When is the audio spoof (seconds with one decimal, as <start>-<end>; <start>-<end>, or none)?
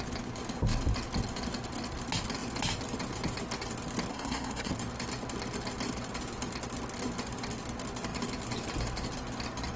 4.1-4.7